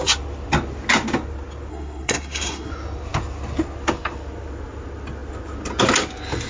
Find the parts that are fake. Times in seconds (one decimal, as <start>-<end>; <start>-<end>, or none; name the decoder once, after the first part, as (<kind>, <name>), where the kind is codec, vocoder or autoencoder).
1.7-2.7 (codec, SNAC)